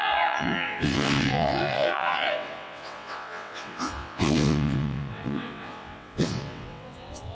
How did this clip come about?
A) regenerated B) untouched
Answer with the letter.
A